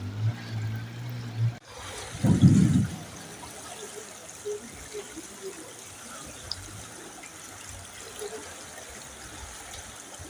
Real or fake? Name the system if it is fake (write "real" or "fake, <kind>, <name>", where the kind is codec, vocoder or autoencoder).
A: real